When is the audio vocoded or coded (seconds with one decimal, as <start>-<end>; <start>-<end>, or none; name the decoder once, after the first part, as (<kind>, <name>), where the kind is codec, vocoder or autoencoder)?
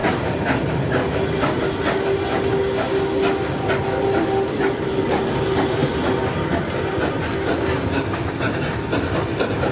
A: none